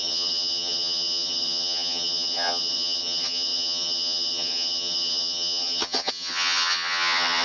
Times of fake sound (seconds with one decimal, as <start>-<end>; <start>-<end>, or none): 0.0-7.4